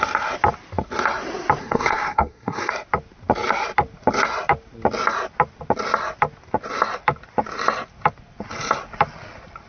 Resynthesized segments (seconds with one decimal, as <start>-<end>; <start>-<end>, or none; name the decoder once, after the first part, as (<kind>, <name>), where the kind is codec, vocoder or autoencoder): 1.6-2.7 (codec, SNAC)